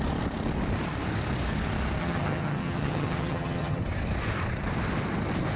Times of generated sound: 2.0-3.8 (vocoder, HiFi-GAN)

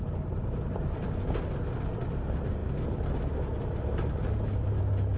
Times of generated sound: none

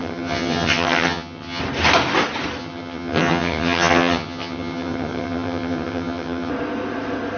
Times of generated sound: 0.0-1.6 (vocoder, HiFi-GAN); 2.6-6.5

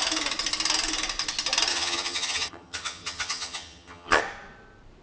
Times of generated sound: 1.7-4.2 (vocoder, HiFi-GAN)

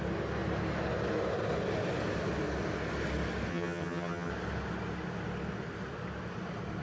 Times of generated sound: 3.5-4.3 (vocoder, HiFi-GAN)

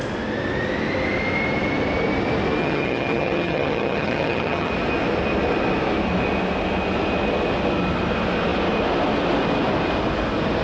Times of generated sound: 2.6-4.7 (vocoder, HiFi-GAN)